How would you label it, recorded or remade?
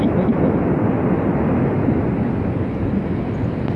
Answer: recorded